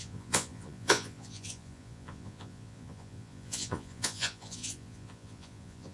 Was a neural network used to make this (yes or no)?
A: yes